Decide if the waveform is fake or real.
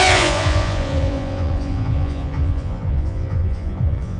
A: fake